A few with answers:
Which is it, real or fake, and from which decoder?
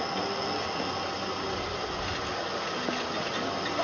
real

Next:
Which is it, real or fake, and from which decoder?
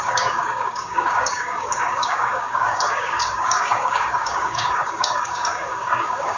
fake, codec, DAC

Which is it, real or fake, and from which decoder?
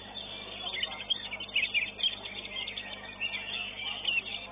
real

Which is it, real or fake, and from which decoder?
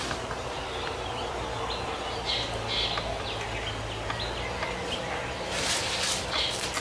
real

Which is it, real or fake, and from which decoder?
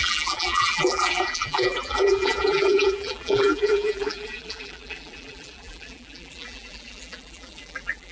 fake, vocoder, BigVGAN v2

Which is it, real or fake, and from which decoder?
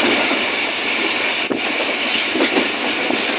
real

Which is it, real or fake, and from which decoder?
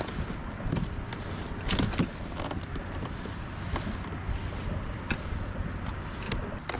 real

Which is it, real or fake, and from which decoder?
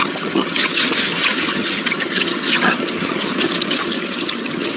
fake, vocoder, HiFi-GAN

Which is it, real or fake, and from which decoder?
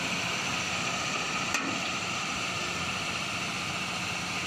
fake, vocoder, BigVGAN v2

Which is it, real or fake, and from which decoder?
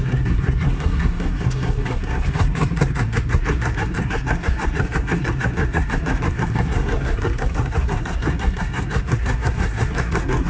fake, codec, SNAC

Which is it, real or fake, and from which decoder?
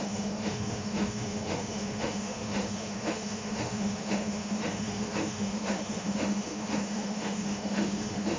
fake, autoencoder, DAC-VAE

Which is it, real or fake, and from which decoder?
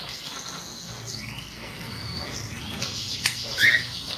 fake, codec, SNAC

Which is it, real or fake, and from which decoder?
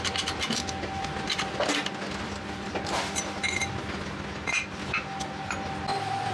real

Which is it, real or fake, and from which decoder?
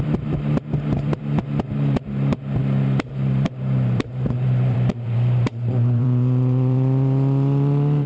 fake, vocoder, BigVGAN v2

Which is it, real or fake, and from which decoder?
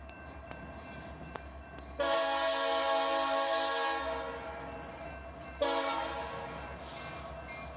real